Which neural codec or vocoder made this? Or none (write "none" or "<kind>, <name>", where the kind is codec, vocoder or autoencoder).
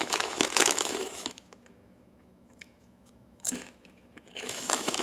autoencoder, DAC-VAE